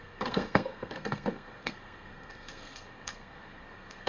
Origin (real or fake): fake